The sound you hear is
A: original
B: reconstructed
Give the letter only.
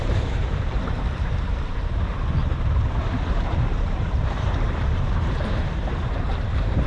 B